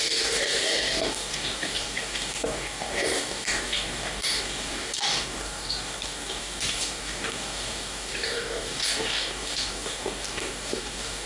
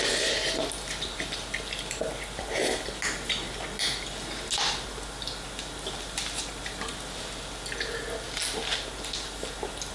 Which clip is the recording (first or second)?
second